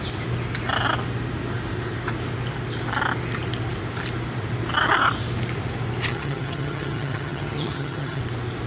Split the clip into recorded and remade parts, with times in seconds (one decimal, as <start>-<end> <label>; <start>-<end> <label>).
0.0-6.1 recorded; 6.1-8.2 remade; 8.2-8.7 recorded